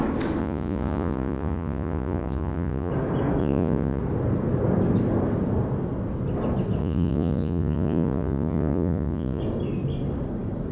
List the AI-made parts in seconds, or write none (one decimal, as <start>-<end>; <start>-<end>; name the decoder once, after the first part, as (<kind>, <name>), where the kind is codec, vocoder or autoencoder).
0.4-2.9 (vocoder, Vocos); 3.4-4.0; 6.8-9.4